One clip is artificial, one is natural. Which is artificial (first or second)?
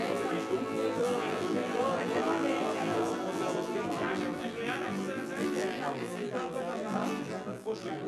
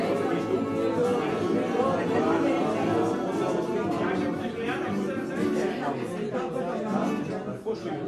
first